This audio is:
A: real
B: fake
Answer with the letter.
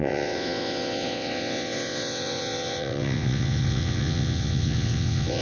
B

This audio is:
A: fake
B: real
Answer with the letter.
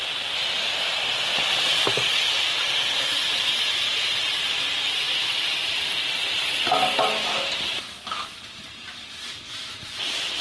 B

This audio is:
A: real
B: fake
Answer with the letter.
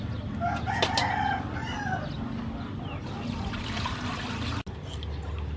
A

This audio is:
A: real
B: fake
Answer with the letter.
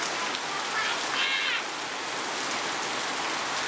A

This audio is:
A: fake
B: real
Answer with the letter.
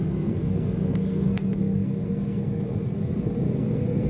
A